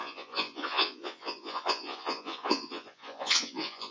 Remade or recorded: remade